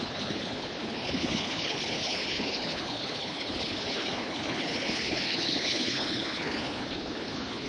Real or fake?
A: fake